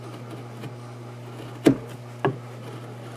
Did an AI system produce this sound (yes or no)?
no